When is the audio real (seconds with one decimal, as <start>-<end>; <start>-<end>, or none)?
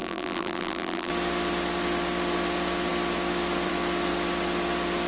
1.1-5.1